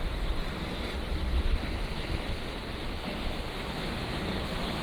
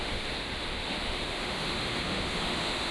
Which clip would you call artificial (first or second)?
second